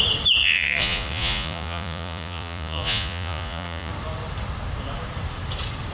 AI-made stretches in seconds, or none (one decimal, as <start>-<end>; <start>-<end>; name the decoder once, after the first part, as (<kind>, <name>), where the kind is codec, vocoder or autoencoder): 0.4-3.9 (vocoder, Vocos)